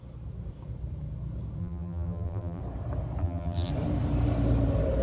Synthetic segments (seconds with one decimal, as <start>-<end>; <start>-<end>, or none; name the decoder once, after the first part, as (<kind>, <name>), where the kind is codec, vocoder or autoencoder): 1.6-2.6 (vocoder, BigVGAN v2); 3.2-3.7